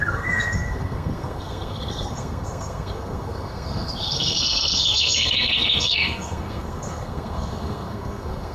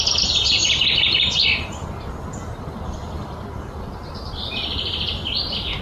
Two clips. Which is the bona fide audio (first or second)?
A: second